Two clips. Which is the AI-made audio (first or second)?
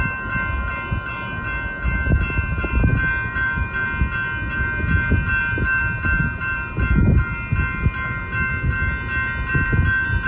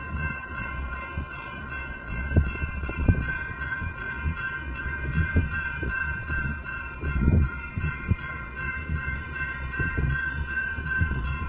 second